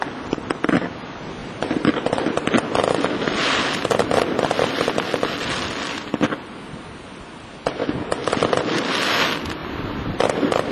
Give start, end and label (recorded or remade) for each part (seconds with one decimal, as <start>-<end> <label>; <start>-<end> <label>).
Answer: 0.0-1.4 recorded; 1.4-2.3 remade; 2.3-10.7 recorded